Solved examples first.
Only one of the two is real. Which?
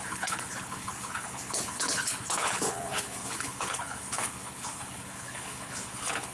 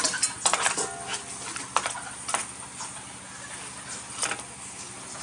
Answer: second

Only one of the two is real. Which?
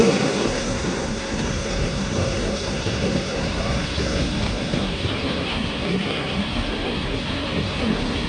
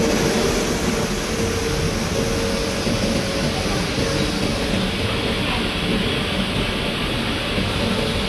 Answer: second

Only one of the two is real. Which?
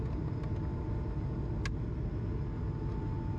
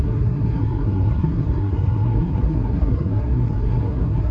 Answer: first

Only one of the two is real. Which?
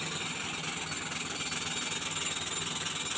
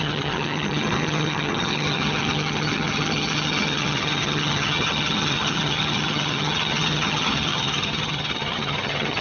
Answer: first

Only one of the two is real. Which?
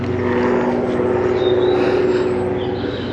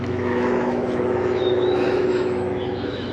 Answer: first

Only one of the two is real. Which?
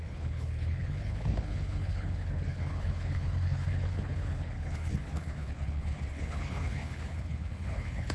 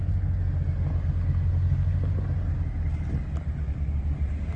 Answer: second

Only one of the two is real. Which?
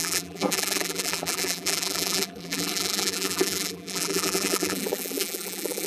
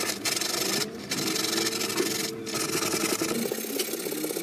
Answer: second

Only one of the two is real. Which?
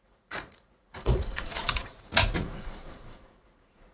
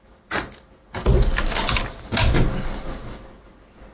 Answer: second